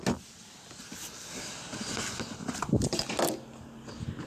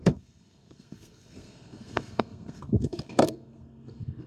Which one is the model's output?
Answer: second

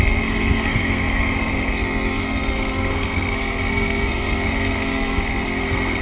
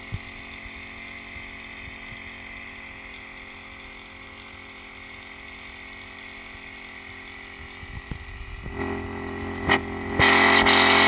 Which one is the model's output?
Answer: first